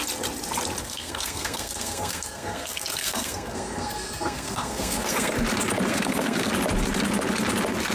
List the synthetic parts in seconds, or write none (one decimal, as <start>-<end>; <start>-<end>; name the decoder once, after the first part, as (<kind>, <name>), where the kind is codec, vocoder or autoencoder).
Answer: 0.8-5.3 (codec, SNAC); 5.9-6.5